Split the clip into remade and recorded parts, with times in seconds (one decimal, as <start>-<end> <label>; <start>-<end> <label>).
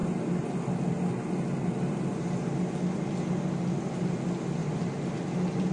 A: 0.0-5.7 recorded